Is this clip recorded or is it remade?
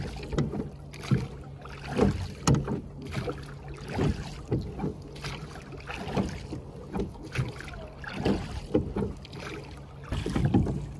recorded